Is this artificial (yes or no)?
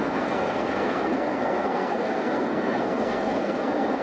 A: yes